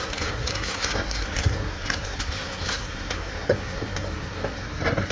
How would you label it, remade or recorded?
remade